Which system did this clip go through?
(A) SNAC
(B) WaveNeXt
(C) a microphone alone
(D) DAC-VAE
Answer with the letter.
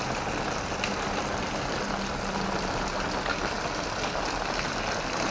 C